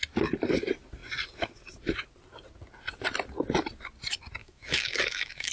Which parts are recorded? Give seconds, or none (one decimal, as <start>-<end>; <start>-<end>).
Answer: 0.0-4.4